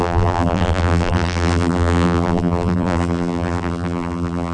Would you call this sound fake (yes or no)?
yes